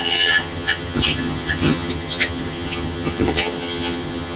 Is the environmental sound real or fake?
fake